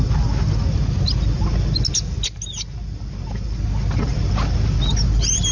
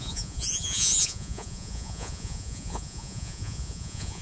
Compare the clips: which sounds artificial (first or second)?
second